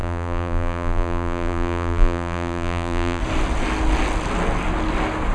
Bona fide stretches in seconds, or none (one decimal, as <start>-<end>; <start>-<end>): 3.2-5.3